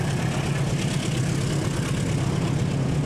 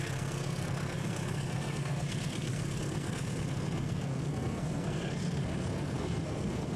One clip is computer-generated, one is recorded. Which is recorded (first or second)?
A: first